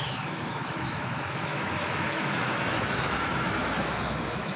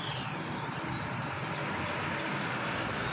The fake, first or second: first